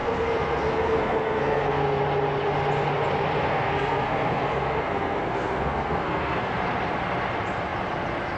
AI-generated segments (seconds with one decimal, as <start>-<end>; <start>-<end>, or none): 0.0-2.0; 3.4-6.5